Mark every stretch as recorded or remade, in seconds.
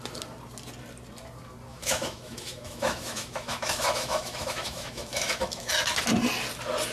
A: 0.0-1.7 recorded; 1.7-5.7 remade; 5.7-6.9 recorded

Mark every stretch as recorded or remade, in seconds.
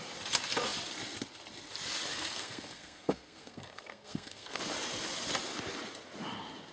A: 0.0-2.1 recorded; 2.1-4.6 remade; 4.6-6.7 recorded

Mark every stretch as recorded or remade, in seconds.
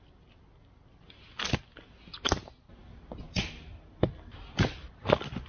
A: 0.0-5.5 recorded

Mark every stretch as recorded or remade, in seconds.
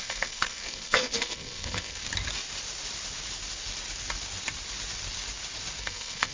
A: 0.0-2.0 remade; 2.0-5.8 recorded; 5.8-6.3 remade